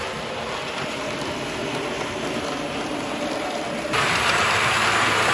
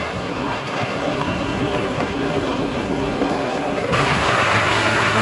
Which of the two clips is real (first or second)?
first